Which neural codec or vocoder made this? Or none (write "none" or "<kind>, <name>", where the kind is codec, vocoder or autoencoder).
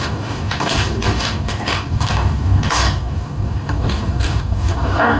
codec, DAC